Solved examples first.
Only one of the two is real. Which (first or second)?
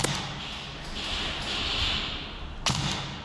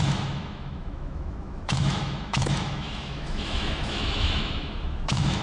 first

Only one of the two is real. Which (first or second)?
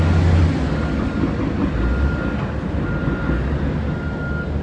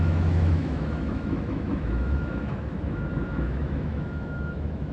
first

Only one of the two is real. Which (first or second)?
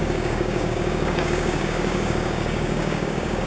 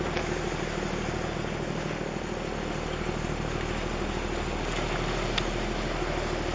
second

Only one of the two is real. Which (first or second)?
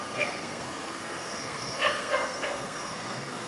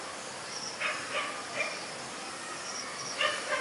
second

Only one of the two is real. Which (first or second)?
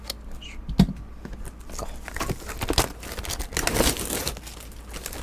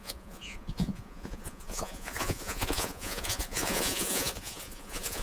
first